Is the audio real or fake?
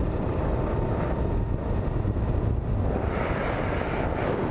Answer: real